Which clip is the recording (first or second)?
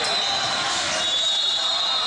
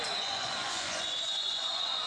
first